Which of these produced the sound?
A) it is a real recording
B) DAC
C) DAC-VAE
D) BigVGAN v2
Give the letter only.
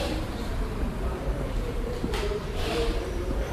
D